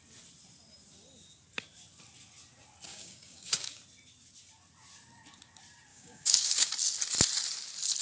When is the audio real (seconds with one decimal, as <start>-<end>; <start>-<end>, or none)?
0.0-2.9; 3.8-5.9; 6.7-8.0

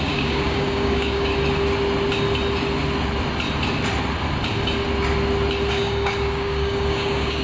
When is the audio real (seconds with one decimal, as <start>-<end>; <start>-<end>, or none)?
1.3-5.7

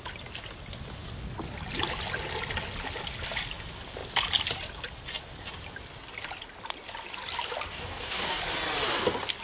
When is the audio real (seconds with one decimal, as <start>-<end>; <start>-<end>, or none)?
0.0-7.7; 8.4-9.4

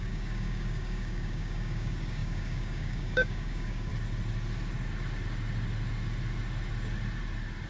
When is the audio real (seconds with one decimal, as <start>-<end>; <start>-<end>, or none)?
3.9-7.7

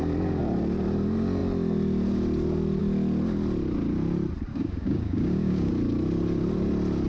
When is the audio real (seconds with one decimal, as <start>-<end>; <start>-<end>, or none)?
0.0-4.5; 5.7-7.1

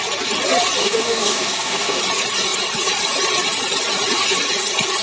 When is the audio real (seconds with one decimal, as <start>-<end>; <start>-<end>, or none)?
0.0-0.8; 2.0-5.0

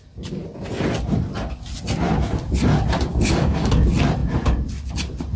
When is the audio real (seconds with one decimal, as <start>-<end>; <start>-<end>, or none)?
0.0-3.1; 3.7-5.4